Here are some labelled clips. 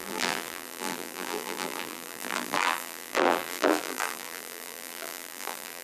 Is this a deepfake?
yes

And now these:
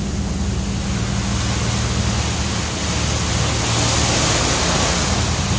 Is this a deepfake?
no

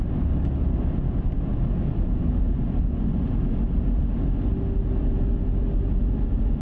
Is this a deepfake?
no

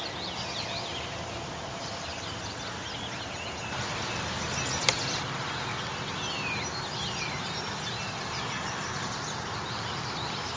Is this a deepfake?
no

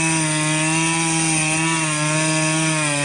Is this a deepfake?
no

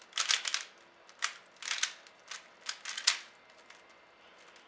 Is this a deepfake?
no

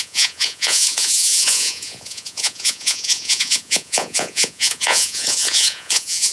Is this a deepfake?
yes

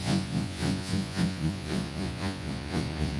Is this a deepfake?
yes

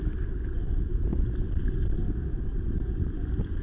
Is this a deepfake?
no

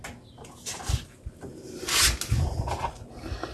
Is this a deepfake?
no